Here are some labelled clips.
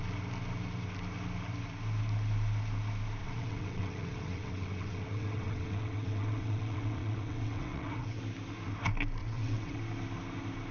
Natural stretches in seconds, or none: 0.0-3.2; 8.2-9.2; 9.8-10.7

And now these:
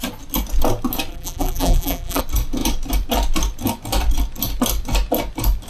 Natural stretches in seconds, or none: 0.0-1.1; 2.2-5.7

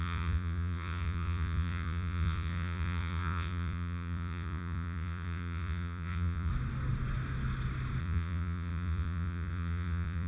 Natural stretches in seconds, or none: 6.5-8.0